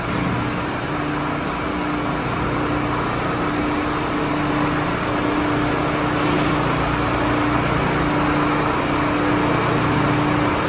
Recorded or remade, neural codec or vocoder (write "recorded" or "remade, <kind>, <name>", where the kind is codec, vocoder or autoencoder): recorded